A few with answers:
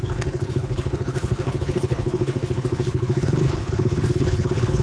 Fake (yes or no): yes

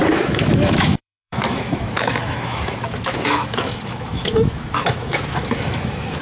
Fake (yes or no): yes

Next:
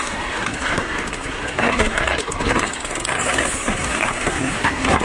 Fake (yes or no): yes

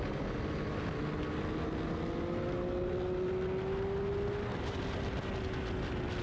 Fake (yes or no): no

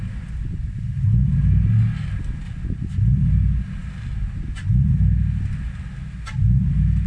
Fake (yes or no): no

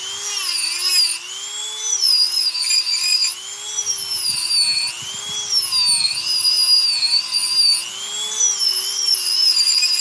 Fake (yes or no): no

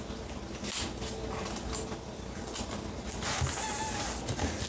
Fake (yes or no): no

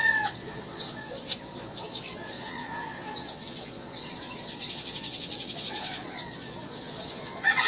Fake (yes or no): yes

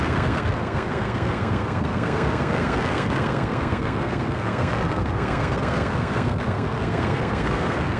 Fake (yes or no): yes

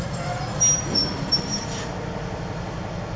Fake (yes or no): no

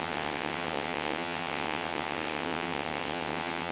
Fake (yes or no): yes